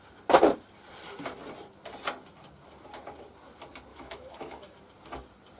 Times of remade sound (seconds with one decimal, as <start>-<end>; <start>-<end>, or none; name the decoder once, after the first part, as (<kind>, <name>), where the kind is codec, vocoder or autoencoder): 3.9-4.8 (autoencoder, DAC-VAE)